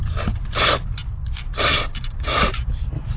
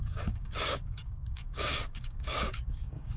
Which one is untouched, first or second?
first